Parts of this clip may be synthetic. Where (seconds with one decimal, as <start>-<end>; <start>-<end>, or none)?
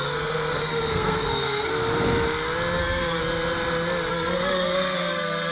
0.0-1.7; 2.8-3.2; 4.1-5.5